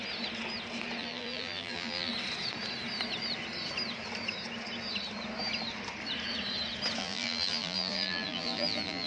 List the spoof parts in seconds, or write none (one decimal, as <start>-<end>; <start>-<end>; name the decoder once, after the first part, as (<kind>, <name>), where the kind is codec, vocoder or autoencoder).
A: 1.0-2.1 (vocoder, BigVGAN v2); 7.0-9.1